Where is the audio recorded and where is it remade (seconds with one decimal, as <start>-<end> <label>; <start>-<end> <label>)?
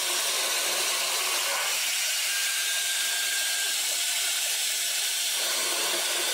0.0-1.5 recorded; 1.5-5.3 remade; 5.3-6.3 recorded